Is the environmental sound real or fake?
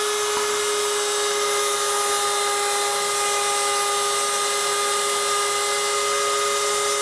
real